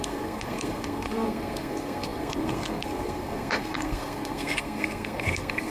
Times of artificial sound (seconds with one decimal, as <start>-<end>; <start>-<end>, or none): 0.0-5.7

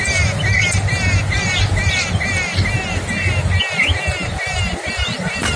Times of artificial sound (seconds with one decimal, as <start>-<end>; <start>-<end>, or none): none

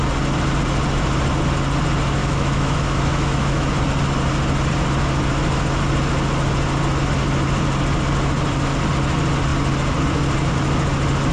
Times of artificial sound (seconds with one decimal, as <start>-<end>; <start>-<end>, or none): 2.2-3.7

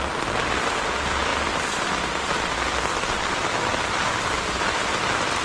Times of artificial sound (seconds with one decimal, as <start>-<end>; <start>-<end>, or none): none

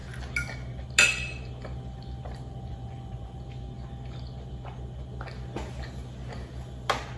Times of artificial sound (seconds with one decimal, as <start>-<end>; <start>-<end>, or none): 2.5-3.4

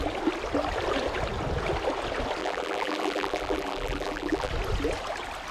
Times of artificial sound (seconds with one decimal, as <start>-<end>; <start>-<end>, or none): 2.4-4.5